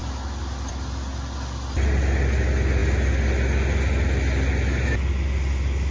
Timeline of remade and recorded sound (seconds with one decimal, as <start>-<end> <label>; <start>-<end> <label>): 0.0-5.9 recorded